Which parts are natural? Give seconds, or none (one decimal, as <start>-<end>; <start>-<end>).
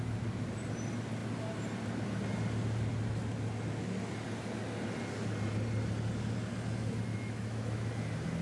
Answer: 0.0-7.1; 7.9-8.4